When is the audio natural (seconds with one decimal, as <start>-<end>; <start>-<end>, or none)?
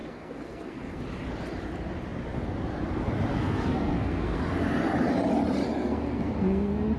1.0-3.3; 4.4-5.8